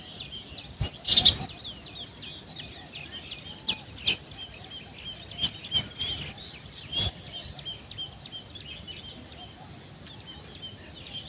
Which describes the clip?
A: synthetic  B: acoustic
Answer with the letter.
B